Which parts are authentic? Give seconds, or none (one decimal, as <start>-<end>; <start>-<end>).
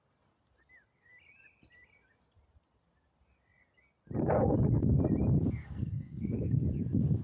0.0-5.6; 6.6-7.2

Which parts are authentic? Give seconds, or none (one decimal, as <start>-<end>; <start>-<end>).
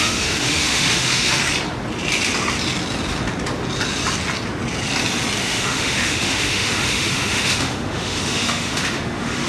1.4-5.4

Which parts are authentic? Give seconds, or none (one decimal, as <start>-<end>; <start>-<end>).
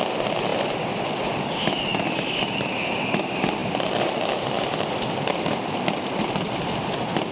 0.0-7.3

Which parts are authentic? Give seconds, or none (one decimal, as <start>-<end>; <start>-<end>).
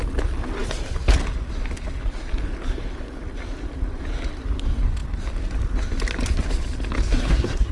0.0-7.1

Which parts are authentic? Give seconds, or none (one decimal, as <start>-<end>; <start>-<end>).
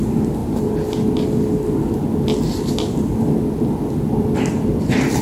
0.0-5.2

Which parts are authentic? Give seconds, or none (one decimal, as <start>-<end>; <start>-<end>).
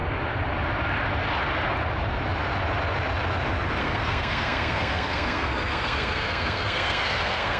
0.0-3.8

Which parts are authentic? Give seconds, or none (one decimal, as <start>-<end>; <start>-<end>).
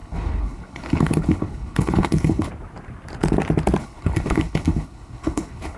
2.5-3.8